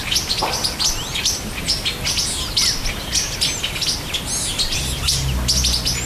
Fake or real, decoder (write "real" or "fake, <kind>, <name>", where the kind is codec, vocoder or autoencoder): real